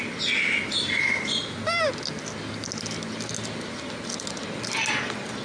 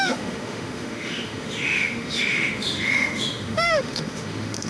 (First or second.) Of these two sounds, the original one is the first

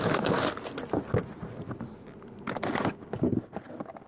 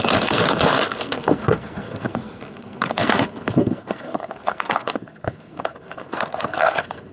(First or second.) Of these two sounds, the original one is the first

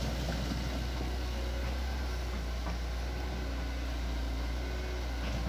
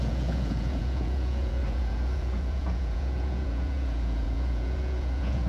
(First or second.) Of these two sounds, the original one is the first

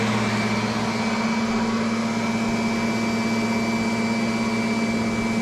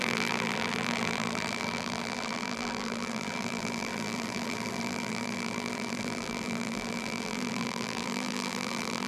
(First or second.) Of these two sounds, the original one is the first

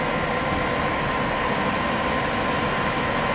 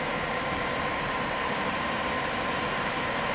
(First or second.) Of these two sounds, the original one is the first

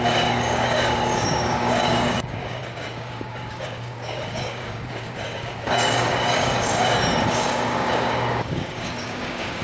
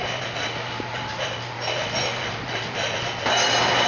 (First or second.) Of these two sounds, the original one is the second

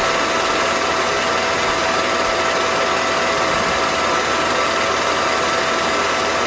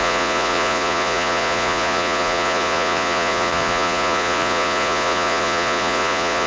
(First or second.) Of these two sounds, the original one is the first